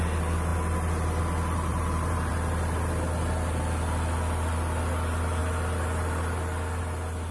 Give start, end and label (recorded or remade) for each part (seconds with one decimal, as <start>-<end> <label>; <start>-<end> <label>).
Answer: 0.0-1.7 recorded; 1.7-2.3 remade; 2.3-7.3 recorded